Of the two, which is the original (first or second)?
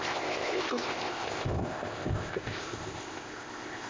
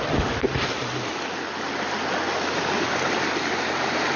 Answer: second